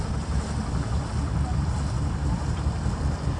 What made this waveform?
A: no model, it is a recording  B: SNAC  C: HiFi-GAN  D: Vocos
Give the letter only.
A